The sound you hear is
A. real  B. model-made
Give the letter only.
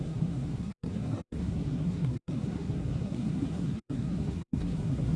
B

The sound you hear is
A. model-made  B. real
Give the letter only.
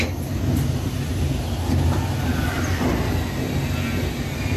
B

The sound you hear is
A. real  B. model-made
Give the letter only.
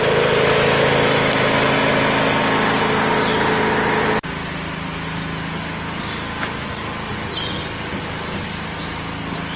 A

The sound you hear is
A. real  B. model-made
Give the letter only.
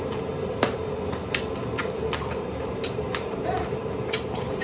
B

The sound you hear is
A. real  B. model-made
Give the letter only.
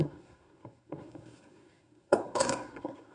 B